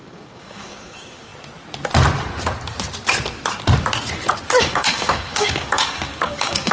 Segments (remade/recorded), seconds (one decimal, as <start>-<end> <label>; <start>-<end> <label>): 0.0-1.3 remade; 1.3-4.6 recorded; 4.6-6.7 remade